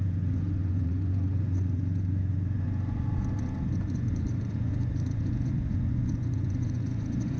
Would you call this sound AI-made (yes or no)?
yes